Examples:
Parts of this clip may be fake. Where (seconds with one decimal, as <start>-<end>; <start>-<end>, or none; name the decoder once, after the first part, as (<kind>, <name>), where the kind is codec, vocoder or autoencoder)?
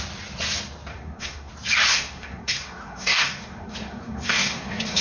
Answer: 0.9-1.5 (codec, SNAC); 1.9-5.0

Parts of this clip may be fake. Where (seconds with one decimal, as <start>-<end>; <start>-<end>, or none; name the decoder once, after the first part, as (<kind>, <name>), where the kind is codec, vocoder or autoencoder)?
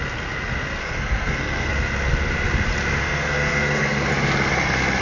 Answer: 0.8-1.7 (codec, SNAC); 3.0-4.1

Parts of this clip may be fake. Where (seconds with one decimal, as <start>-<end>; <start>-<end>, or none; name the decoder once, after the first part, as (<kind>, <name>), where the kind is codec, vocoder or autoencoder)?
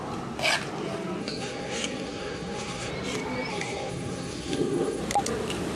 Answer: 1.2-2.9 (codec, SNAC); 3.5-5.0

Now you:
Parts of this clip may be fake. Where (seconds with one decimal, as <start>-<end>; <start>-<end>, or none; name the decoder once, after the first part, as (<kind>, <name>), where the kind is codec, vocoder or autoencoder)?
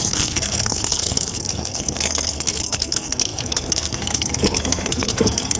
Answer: 0.0-5.6 (codec, SNAC)